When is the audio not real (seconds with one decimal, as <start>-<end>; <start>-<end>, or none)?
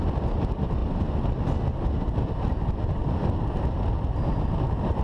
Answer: none